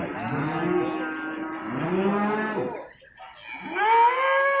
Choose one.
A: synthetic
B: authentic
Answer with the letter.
B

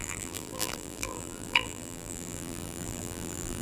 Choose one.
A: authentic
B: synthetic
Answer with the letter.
B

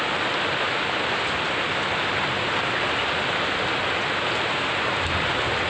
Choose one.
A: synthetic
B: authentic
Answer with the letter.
B